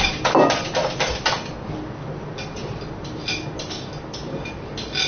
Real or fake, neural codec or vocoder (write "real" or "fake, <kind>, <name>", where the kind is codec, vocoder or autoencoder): real